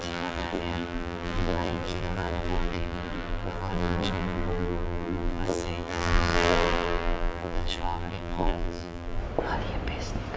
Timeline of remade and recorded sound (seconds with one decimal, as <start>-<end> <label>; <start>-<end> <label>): 0.0-9.2 remade; 9.2-10.4 recorded